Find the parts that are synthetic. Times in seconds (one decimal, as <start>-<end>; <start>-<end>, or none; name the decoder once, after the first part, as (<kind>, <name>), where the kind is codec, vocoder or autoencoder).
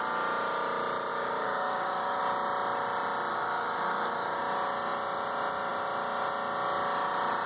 1.1-2.2 (codec, DAC); 3.3-4.4